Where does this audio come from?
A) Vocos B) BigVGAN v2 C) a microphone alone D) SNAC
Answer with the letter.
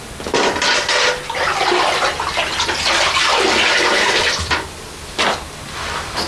C